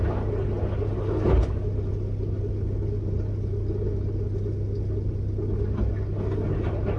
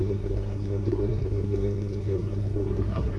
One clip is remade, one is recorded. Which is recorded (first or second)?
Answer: first